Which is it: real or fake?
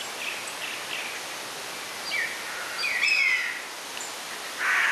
real